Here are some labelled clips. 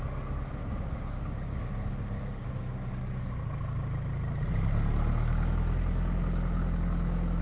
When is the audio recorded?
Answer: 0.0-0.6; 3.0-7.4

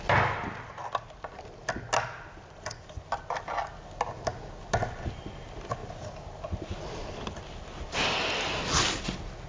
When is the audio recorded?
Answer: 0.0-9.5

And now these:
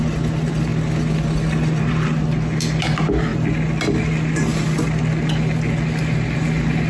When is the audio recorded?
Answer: 0.0-6.9

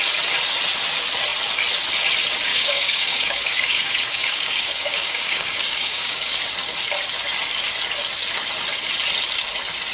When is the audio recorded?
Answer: 0.0-2.5; 6.4-9.9

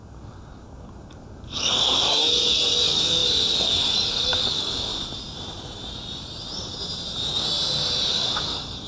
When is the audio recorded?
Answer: 4.9-8.1